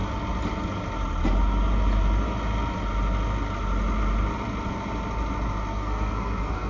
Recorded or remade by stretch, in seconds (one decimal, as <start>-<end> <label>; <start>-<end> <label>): 0.0-5.7 recorded; 5.7-6.7 remade

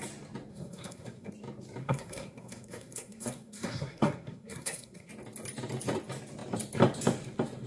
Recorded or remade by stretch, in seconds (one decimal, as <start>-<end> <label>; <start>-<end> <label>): 0.0-0.5 recorded; 0.5-1.3 remade; 1.3-1.8 recorded; 1.8-5.1 remade; 5.1-7.7 recorded

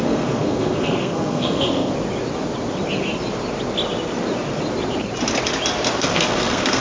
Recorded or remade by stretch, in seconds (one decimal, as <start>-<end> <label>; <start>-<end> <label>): 0.0-1.9 remade; 1.9-6.0 recorded; 6.0-6.8 remade

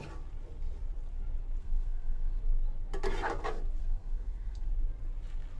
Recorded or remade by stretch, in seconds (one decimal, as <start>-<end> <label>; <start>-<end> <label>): 0.0-1.6 recorded; 1.6-2.4 remade; 2.4-3.8 recorded; 3.8-4.7 remade; 4.7-5.6 recorded

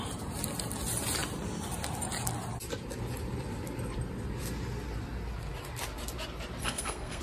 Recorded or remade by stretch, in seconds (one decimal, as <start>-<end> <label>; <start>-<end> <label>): 0.0-6.6 recorded; 6.6-7.2 remade